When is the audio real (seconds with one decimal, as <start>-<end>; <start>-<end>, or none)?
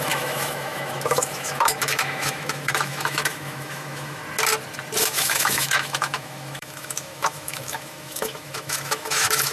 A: 4.2-5.0